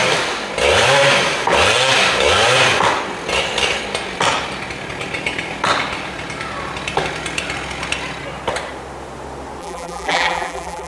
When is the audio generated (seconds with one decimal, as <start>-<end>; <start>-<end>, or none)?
9.6-10.9